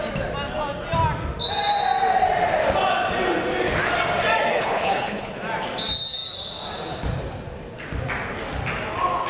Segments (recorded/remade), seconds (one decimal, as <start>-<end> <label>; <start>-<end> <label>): 0.0-4.5 recorded; 4.5-5.4 remade; 5.4-9.3 recorded